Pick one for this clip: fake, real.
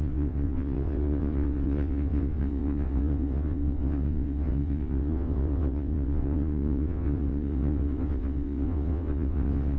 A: fake